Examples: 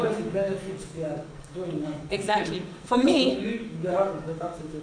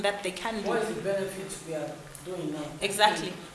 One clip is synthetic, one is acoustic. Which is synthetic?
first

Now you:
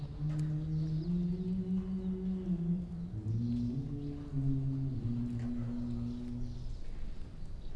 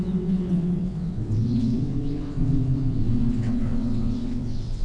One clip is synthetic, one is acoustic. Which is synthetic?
second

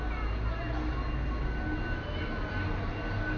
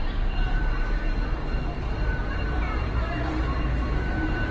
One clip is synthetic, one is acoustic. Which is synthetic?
second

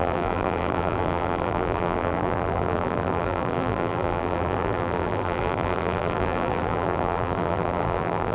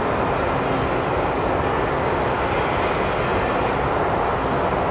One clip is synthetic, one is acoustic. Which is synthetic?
first